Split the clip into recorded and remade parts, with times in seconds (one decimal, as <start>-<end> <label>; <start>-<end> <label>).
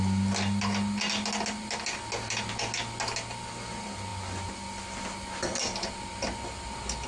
0.0-7.1 recorded